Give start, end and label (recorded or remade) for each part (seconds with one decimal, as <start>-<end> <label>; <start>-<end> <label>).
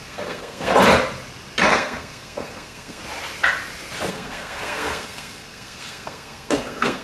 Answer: 0.0-0.7 remade; 0.7-1.7 recorded; 1.7-3.0 remade; 3.0-4.1 recorded; 4.1-7.0 remade